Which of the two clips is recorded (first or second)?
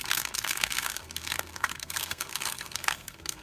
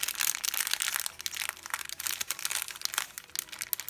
second